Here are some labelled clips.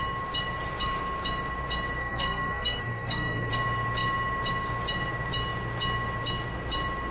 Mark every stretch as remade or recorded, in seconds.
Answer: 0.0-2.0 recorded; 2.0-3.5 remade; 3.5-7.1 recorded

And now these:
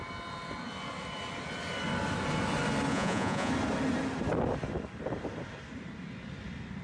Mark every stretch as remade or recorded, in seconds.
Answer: 0.0-2.9 recorded; 2.9-3.5 remade; 3.5-6.8 recorded

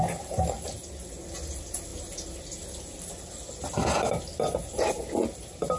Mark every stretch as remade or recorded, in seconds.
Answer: 0.0-5.8 recorded

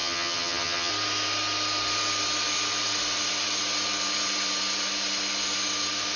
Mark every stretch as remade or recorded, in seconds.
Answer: 0.0-0.9 remade; 0.9-6.2 recorded

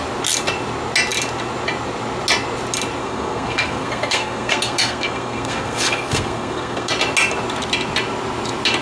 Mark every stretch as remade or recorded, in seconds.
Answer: 0.0-3.0 recorded; 3.0-6.9 remade; 6.9-8.8 recorded